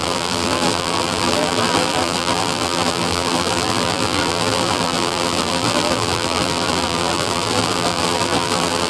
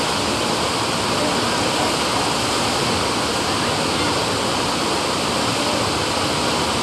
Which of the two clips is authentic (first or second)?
second